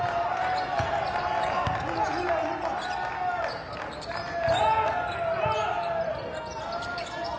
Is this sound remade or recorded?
recorded